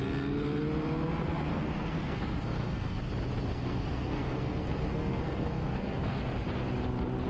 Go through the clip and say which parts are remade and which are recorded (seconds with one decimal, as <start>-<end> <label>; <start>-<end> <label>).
0.0-1.5 recorded; 1.5-3.0 remade; 3.0-3.5 recorded; 3.5-6.2 remade; 6.2-7.3 recorded